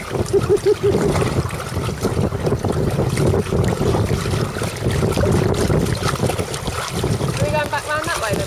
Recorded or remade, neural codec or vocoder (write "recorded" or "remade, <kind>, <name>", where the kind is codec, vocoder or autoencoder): recorded